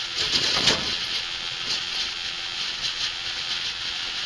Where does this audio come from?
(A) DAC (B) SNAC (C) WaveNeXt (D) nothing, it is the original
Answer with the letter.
C